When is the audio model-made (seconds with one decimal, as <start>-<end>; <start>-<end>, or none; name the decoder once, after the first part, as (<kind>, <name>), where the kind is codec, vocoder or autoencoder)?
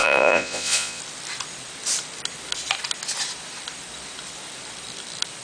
0.0-1.0 (vocoder, Vocos)